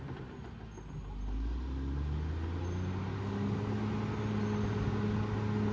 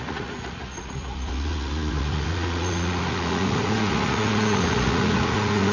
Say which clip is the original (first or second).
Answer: first